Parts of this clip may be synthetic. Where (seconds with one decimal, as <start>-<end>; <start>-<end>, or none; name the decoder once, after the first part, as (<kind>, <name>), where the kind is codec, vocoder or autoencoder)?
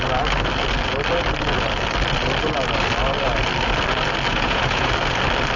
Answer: 4.3-4.9 (vocoder, Vocos)